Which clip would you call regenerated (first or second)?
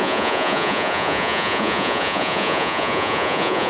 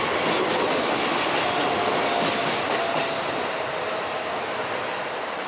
first